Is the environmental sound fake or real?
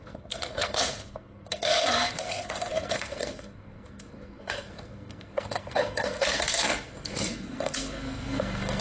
fake